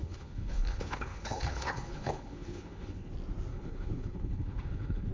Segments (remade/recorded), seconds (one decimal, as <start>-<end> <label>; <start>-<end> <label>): 0.0-3.1 remade; 3.1-3.5 recorded; 3.5-5.1 remade